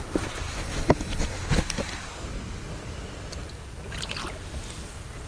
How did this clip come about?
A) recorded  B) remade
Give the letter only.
A